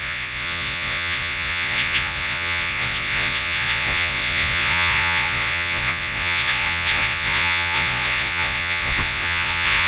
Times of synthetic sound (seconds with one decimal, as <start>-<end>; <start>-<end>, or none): 0.0-9.9